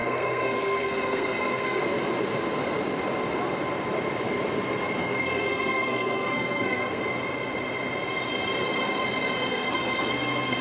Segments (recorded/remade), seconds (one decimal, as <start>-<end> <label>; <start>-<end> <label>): 0.0-1.8 remade; 1.8-5.0 recorded; 5.0-7.0 remade; 7.0-9.5 recorded; 9.5-10.6 remade